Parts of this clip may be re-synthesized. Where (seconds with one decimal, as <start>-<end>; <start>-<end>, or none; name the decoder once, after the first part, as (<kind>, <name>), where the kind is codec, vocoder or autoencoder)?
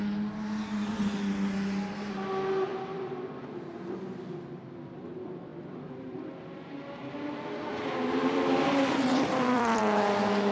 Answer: 2.7-4.1 (vocoder, BigVGAN v2); 7.7-9.8